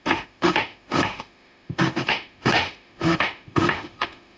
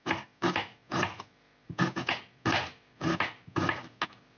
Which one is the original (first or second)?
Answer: second